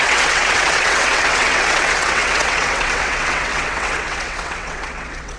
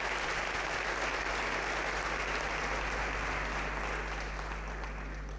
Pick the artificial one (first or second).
first